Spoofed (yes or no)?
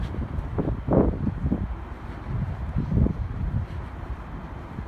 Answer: no